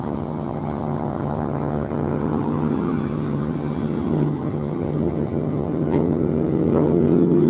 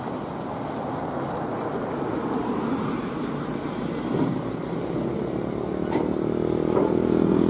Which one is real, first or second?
second